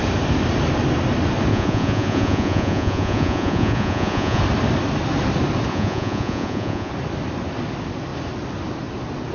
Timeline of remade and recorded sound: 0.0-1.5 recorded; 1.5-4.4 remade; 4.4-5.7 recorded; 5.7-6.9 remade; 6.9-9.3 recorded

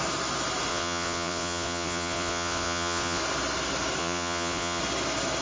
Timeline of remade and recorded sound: 0.0-0.7 recorded; 0.7-3.2 remade; 3.2-4.0 recorded; 4.0-4.8 remade; 4.8-5.4 recorded

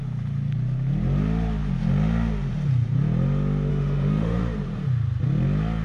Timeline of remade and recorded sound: 0.0-3.7 recorded; 3.7-4.4 remade; 4.4-5.8 recorded

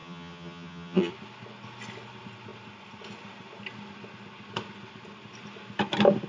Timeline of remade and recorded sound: 0.0-1.1 remade; 1.1-6.3 recorded

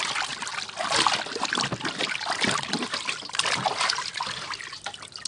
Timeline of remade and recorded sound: 0.0-5.3 recorded

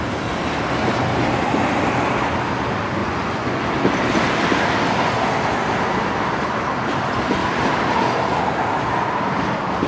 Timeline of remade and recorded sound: 0.0-3.0 recorded; 3.0-3.7 remade; 3.7-9.9 recorded

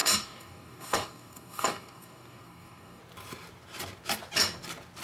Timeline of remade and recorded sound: 0.0-3.0 remade; 3.0-5.0 recorded